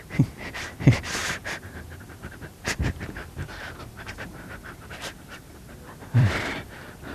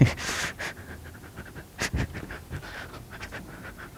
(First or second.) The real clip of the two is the second